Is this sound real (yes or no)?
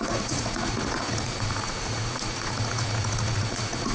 no